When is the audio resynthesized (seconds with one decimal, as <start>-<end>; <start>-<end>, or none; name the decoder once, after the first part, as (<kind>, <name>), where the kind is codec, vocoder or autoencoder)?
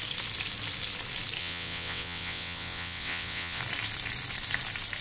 1.4-3.6 (vocoder, WaveNeXt)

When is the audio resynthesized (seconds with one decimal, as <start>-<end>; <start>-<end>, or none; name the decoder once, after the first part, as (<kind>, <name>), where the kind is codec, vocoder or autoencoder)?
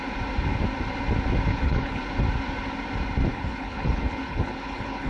1.5-2.0 (codec, HILCodec); 3.3-5.1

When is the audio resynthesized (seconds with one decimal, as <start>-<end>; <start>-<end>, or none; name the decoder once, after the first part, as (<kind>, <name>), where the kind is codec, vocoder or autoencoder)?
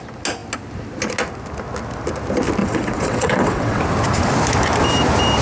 2.6-3.8 (vocoder, WaveNeXt)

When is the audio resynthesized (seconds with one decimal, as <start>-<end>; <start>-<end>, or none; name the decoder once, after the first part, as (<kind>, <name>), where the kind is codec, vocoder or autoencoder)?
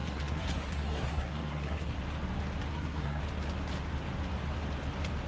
0.0-2.0 (codec, SNAC); 2.7-3.2